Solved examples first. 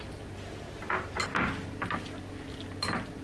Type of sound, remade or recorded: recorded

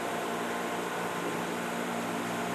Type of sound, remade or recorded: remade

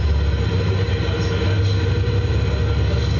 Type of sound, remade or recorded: recorded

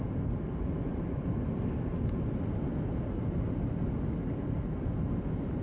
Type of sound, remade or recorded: recorded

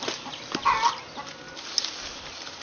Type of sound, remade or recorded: recorded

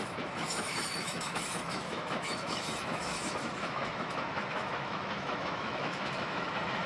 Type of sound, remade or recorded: remade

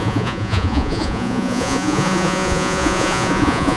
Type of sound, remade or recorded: remade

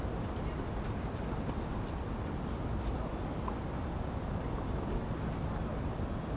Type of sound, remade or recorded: remade